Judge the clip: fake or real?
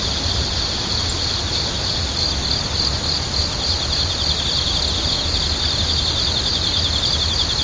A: real